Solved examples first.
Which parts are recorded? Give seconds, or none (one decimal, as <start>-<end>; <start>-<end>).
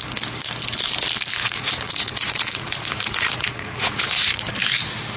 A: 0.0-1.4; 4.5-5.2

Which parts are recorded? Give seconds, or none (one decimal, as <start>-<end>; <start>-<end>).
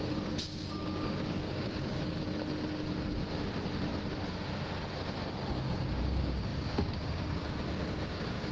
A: 2.2-5.5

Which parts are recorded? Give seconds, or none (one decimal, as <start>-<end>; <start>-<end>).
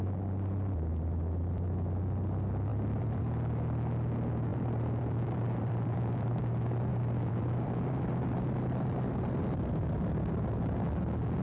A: 0.0-2.7; 3.2-4.5; 6.4-6.9; 9.7-11.4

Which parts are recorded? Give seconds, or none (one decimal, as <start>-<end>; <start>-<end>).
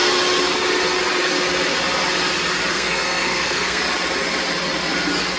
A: 0.0-2.7; 3.8-5.4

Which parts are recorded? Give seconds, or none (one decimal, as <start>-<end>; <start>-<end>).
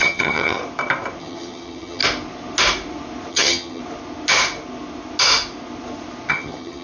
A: 0.6-1.2; 2.0-3.3; 3.8-6.3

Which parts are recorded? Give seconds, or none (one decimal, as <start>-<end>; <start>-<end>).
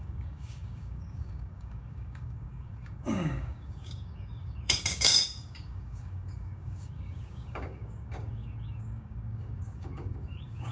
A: none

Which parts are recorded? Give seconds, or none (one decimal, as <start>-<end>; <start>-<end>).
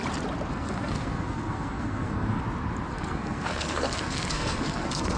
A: 0.0-0.5; 2.4-2.9